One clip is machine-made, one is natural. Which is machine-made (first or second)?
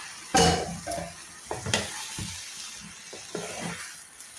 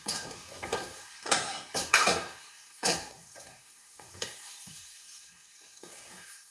second